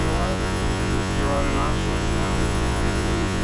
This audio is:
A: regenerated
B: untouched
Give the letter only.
A